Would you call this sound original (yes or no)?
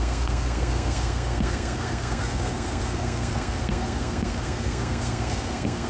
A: no